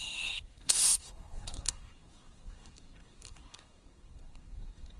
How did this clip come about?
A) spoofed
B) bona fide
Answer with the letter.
A